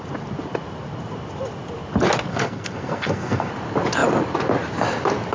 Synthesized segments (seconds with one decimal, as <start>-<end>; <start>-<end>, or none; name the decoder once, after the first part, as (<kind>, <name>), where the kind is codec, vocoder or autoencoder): 2.3-3.5 (codec, SNAC)